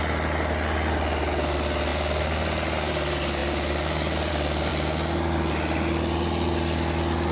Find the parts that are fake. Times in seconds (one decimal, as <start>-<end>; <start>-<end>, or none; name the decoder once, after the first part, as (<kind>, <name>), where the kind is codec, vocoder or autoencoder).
none